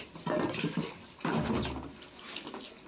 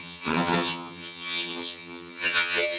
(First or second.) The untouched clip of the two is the first